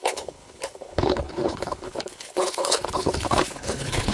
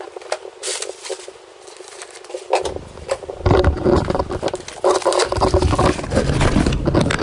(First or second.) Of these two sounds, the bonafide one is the second